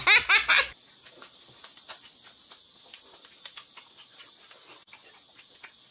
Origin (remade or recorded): recorded